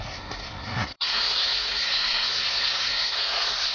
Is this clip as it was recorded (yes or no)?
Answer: no